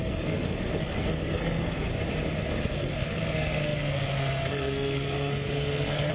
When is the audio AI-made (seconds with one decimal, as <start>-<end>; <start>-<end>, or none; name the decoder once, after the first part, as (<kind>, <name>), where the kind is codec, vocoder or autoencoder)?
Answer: 0.0-1.9 (codec, SNAC); 2.5-6.1